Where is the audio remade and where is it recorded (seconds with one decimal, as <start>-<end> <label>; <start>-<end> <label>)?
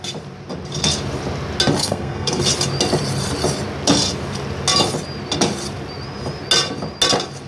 0.0-1.8 recorded; 1.8-2.4 remade; 2.4-7.5 recorded